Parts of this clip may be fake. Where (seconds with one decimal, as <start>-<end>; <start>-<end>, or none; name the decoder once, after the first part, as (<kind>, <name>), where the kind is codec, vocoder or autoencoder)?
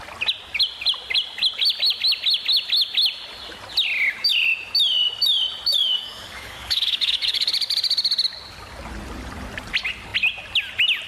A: 5.8-7.5 (codec, DAC)